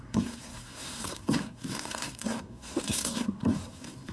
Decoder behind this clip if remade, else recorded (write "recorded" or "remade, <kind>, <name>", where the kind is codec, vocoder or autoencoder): remade, codec, SNAC